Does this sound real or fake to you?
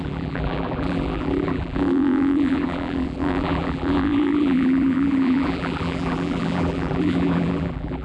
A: fake